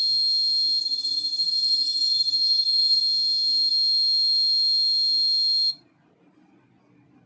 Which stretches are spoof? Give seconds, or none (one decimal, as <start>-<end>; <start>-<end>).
0.8-3.0